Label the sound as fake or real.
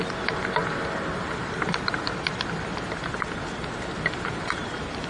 real